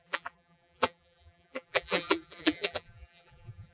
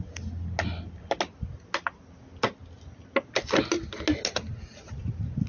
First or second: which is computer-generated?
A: first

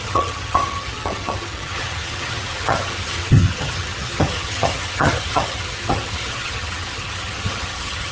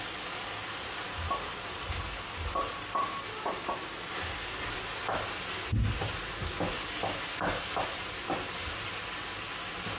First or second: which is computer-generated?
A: first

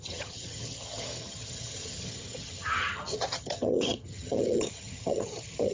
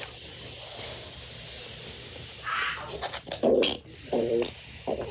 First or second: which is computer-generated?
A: first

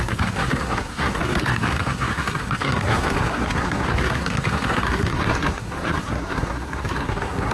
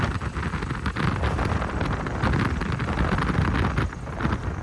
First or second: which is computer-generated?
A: first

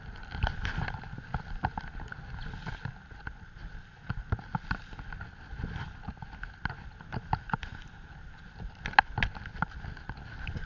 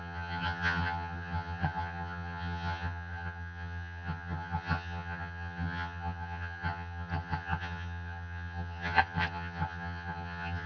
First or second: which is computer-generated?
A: second